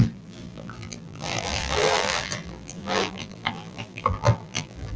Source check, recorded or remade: remade